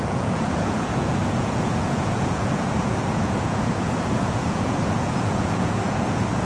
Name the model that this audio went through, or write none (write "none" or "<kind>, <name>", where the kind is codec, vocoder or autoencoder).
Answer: vocoder, Vocos